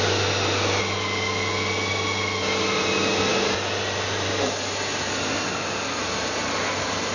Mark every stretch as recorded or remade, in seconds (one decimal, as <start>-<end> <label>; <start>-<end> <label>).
0.0-7.1 recorded